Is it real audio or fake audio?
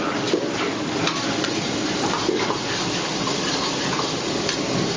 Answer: fake